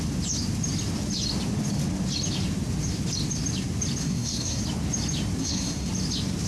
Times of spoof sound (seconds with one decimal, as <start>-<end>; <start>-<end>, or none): 4.0-4.6; 5.4-5.9